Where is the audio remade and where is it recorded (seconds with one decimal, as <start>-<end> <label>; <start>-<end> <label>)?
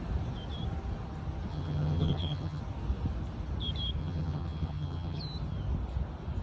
0.0-1.5 recorded; 1.5-2.6 remade; 2.6-4.0 recorded; 4.0-5.2 remade; 5.2-6.4 recorded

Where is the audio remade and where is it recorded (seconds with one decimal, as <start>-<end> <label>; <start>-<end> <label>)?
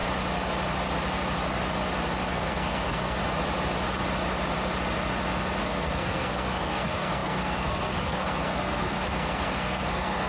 0.0-2.3 recorded; 2.3-3.2 remade; 3.2-5.6 recorded; 5.6-10.3 remade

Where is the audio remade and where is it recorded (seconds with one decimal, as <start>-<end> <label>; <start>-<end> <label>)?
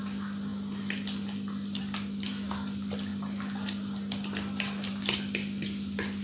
0.0-6.2 recorded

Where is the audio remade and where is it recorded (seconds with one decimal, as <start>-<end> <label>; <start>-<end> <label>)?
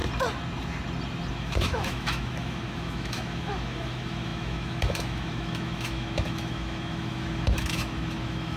0.0-1.3 recorded; 1.3-8.6 remade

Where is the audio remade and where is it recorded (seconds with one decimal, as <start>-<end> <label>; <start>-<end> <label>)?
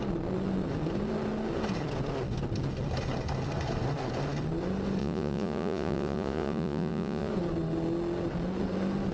0.0-5.0 recorded; 5.0-7.3 remade; 7.3-9.1 recorded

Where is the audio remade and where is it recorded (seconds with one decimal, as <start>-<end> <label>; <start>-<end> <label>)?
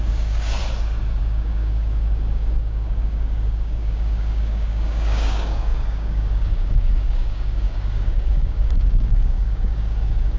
0.0-0.6 remade; 0.6-1.2 recorded; 1.2-10.4 remade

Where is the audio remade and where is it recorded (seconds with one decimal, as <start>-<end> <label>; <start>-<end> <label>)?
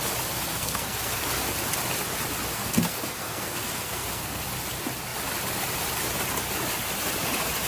0.0-0.5 recorded; 0.5-1.2 remade; 1.2-2.5 recorded; 2.5-4.4 remade; 4.4-7.7 recorded